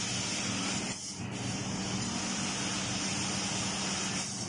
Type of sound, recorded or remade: recorded